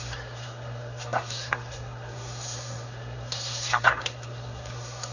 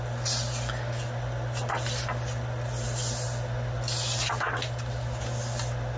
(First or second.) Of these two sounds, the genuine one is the second